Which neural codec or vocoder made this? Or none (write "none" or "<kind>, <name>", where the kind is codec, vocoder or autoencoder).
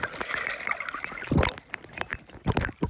none